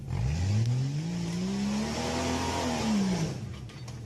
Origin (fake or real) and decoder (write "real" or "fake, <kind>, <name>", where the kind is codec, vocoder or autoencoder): real